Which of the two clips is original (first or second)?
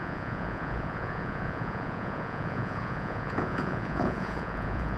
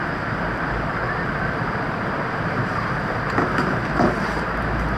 second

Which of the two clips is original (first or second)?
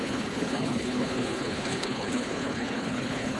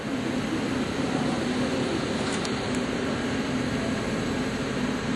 second